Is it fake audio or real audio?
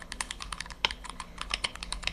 fake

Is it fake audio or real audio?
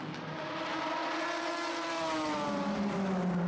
real